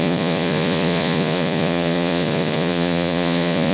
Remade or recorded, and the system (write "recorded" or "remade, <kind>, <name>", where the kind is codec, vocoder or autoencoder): remade, vocoder, Vocos